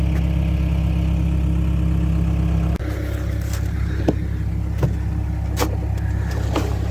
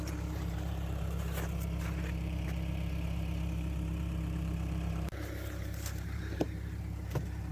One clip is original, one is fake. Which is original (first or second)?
first